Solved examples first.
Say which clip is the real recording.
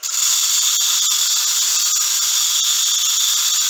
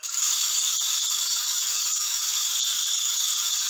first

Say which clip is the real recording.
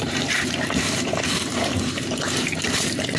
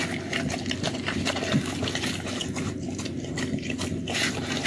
second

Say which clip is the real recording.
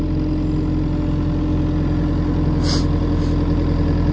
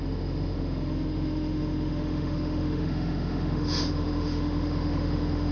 first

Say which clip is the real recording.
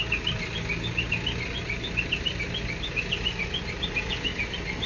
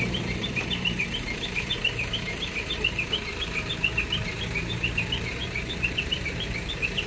first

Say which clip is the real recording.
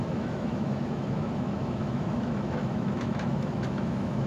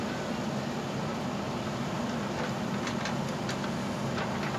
second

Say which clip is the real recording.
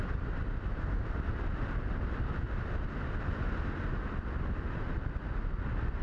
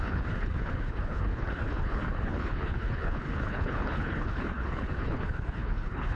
first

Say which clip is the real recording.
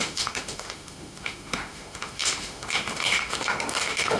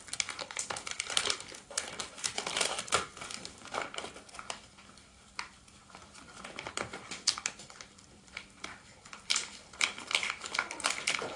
second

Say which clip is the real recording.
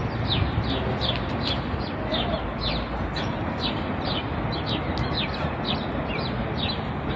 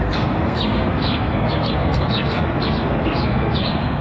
first